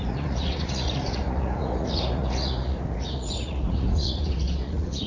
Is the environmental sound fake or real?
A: fake